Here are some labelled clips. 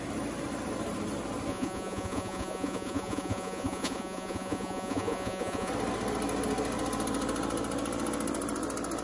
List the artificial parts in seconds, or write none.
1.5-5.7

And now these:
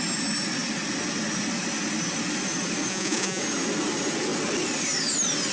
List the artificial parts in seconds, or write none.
2.9-3.4

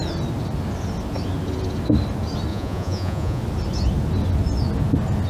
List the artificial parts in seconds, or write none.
2.5-3.4

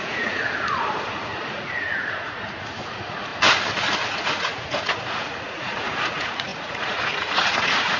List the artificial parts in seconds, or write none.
0.0-3.3; 4.1-8.0

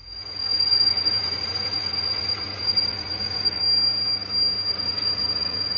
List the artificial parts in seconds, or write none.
0.0-3.6; 4.7-5.8